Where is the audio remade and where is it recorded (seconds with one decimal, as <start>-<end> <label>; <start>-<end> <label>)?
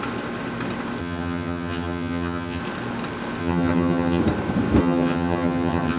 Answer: 0.0-1.0 recorded; 1.0-2.6 remade; 2.6-3.4 recorded; 3.4-4.2 remade; 4.2-4.8 recorded; 4.8-6.0 remade